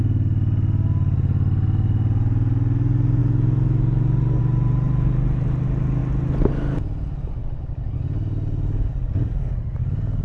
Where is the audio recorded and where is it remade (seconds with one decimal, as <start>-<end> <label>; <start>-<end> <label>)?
0.0-7.4 recorded; 7.4-8.0 remade; 8.0-10.2 recorded